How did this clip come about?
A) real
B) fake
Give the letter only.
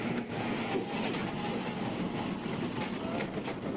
A